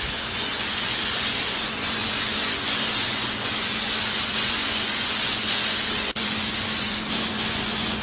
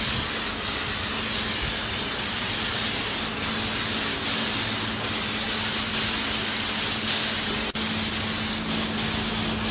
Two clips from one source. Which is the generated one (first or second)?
first